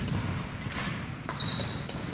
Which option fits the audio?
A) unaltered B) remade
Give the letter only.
A